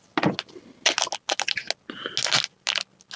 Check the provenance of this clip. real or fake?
real